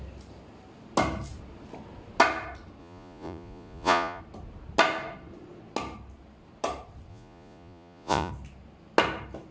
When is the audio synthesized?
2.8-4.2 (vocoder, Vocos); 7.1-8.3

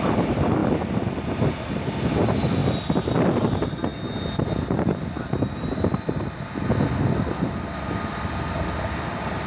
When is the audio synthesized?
none

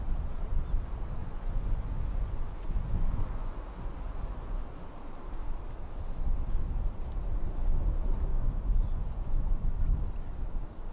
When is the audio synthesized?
1.2-4.6 (vocoder, Vocos); 8.3-9.8